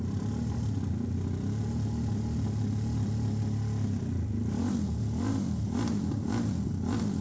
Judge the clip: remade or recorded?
recorded